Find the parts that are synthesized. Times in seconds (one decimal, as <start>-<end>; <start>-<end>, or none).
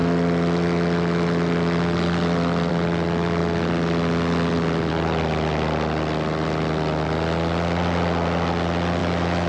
9.0-9.5